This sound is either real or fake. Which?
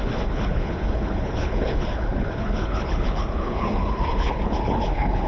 fake